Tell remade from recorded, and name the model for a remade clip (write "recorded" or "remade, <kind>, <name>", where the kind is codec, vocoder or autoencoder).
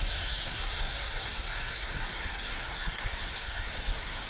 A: remade, codec, SNAC